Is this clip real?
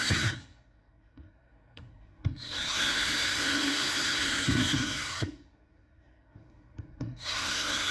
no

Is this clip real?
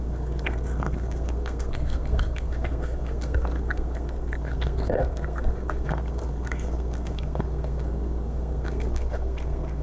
no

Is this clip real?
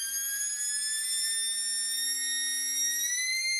yes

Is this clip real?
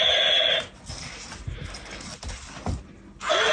yes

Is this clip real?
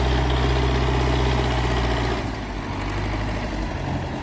yes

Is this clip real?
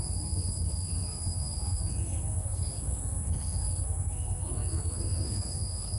no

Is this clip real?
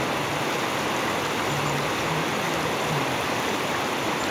yes